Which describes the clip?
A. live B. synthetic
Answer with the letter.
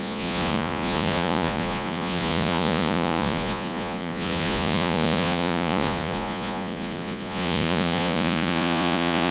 B